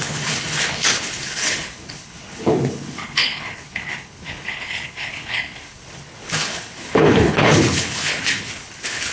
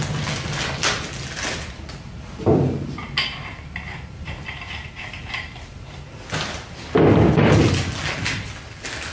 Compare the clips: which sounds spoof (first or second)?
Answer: first